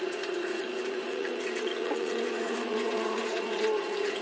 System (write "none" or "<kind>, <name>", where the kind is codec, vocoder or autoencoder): vocoder, Vocos